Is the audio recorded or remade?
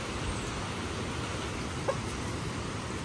recorded